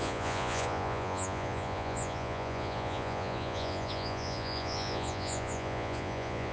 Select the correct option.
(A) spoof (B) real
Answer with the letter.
A